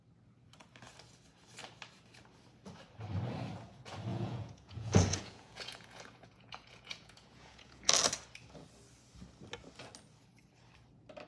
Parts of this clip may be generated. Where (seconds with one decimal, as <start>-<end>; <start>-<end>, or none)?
4.1-7.9